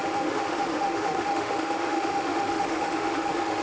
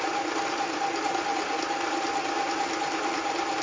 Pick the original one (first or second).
second